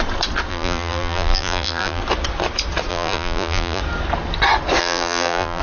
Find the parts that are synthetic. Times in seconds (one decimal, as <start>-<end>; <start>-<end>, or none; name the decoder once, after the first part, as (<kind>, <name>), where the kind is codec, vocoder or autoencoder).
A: 0.5-2.0 (vocoder, BigVGAN v2); 2.9-3.8; 4.8-5.6